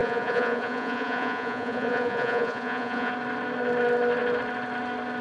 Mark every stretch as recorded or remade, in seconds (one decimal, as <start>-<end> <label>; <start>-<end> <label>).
0.0-3.1 remade; 3.1-5.2 recorded